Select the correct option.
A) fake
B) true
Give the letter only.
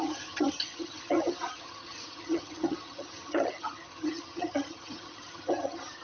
A